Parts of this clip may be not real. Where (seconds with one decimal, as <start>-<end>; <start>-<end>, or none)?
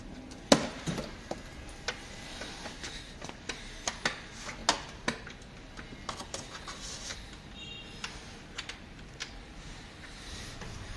none